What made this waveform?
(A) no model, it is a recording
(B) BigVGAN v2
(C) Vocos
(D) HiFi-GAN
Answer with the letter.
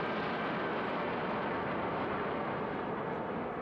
A